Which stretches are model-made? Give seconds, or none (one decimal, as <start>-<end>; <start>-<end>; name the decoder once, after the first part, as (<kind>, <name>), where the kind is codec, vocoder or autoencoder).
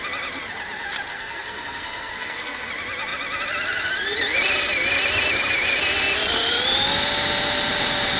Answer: 1.1-2.7 (codec, SNAC)